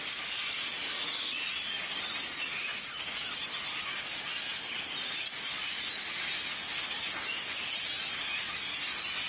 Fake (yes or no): no